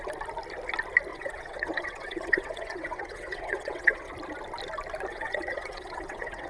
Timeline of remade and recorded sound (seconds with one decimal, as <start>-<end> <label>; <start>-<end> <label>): 0.0-1.1 recorded; 1.1-4.1 remade; 4.1-5.1 recorded; 5.1-6.5 remade